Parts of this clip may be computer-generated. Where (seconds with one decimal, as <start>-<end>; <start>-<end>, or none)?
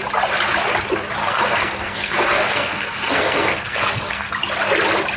1.2-4.3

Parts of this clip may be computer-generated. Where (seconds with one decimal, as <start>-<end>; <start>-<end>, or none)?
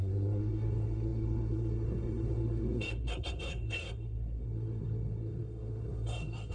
0.0-6.5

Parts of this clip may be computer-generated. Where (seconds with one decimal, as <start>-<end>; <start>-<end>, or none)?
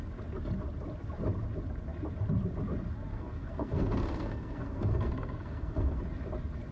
3.1-6.0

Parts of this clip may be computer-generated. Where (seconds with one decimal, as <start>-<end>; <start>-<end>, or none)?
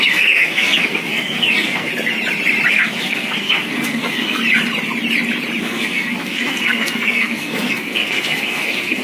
0.0-1.9; 2.7-4.4; 5.6-9.0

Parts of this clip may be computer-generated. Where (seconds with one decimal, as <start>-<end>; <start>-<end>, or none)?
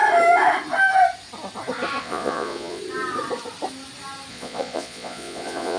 2.0-2.8; 4.3-5.8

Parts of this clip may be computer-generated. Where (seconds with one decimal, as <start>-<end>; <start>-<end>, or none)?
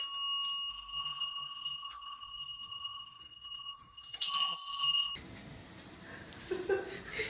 0.7-5.1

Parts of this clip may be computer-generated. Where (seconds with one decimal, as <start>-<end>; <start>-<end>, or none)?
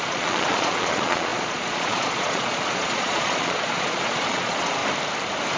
0.0-4.8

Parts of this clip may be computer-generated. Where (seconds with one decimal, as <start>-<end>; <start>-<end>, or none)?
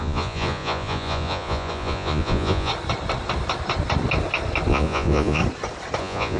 0.0-2.7; 4.7-5.4; 6.0-6.4